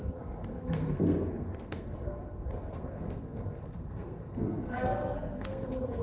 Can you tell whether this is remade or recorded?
remade